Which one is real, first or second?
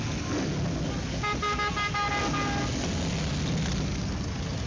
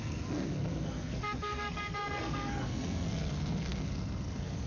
first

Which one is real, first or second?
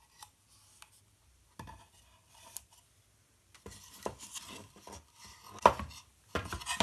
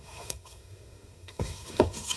first